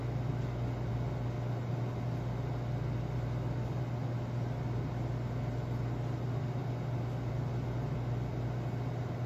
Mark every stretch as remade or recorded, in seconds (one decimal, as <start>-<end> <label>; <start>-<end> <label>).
0.0-9.3 recorded